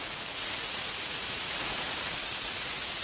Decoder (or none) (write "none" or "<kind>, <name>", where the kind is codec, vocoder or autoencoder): vocoder, Vocos